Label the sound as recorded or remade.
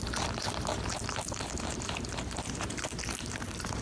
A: recorded